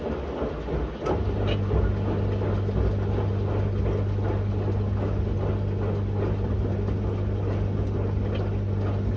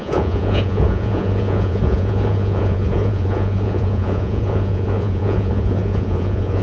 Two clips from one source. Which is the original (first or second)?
first